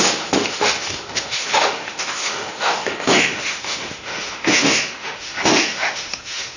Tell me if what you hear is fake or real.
fake